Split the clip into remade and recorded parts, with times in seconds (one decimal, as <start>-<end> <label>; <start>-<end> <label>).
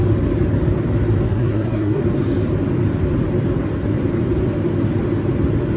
0.0-1.3 recorded; 1.3-2.0 remade; 2.0-5.8 recorded